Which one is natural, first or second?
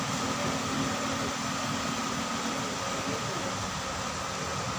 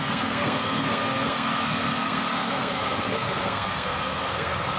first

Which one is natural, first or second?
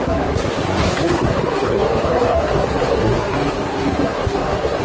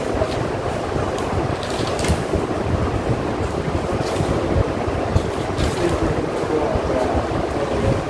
second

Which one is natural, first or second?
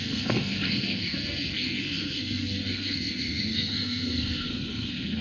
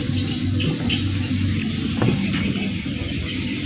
second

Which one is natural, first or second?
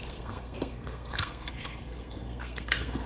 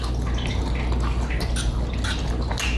second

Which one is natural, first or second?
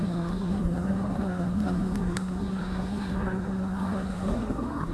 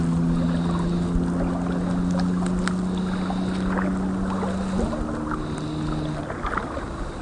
second